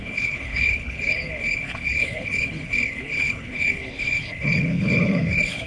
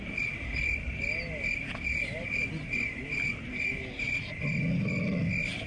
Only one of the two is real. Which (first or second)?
second